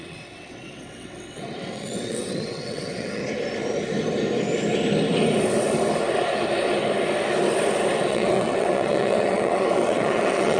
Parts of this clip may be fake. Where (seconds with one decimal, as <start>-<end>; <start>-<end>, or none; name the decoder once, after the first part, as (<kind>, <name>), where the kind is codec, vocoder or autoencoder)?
0.0-3.2 (vocoder, WaveNeXt); 8.1-10.6